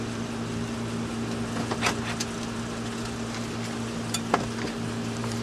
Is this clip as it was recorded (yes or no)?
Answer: yes